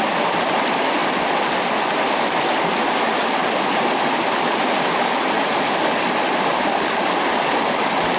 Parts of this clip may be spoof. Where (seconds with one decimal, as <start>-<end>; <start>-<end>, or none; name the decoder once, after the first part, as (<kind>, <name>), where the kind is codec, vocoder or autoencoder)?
none